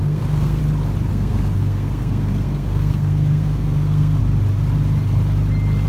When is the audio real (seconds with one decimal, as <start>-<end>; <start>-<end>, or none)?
0.6-1.1; 4.2-5.9